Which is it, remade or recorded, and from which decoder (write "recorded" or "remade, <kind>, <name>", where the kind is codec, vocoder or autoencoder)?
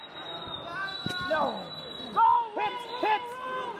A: recorded